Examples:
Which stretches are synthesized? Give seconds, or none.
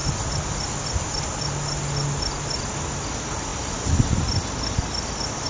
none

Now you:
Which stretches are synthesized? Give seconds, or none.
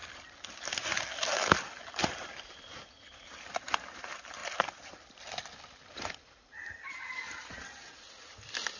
none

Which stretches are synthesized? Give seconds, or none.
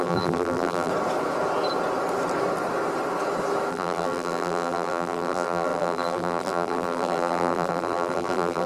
0.0-0.9 (vocoder, BigVGAN v2); 3.7-8.7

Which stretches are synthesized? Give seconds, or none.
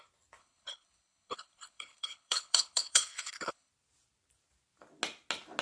0.4-3.7 (codec, HILCodec)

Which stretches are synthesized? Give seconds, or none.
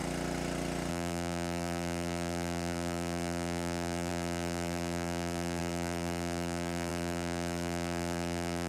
0.9-8.7 (vocoder, BigVGAN v2)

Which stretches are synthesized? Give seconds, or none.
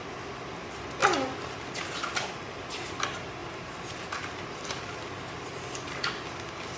3.4-5.0 (vocoder, BigVGAN v2)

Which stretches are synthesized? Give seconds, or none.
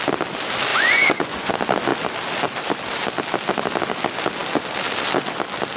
0.7-1.5 (vocoder, Vocos)